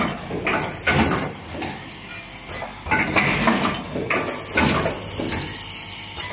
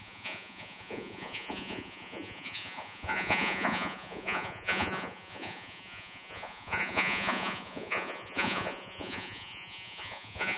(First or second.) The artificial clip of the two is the second